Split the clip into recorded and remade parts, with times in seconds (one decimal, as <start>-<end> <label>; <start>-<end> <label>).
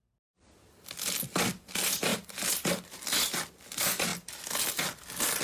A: 0.0-5.4 recorded